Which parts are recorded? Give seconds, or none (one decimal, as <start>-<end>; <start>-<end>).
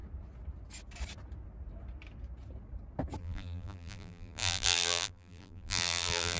0.0-3.2